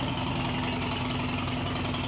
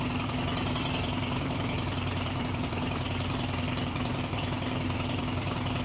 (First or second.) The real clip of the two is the first